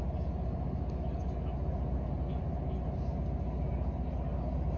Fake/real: real